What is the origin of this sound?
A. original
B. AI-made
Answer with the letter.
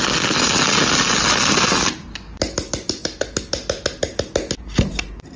A